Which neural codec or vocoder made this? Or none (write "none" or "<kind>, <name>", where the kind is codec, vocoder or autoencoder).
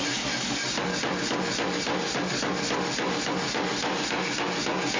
none